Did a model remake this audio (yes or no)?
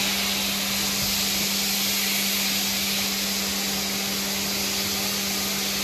no